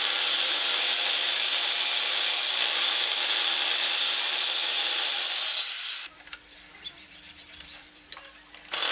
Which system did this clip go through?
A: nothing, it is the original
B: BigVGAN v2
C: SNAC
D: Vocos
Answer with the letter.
B